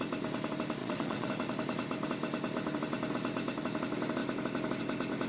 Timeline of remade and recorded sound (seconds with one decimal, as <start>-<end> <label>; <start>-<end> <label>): 0.0-0.8 recorded; 0.8-1.3 remade; 1.3-5.3 recorded